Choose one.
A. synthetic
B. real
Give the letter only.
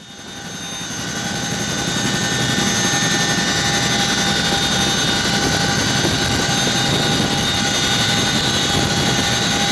B